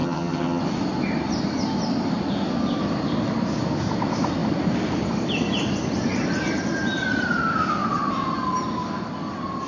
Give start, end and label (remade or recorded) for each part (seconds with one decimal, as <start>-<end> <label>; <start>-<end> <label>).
0.0-0.6 remade; 0.6-9.7 recorded